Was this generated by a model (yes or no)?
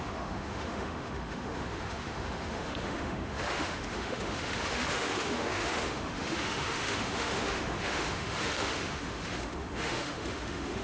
yes